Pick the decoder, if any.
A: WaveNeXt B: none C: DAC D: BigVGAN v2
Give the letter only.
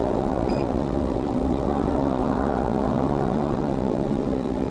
A